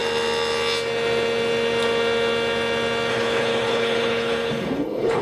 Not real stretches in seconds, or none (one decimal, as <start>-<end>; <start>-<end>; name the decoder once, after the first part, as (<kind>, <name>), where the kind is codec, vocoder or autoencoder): 3.1-5.2 (codec, HILCodec)